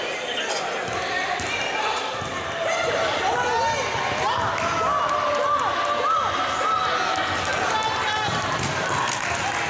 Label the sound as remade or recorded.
recorded